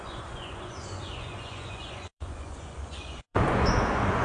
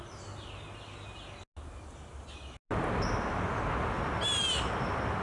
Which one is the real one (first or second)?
second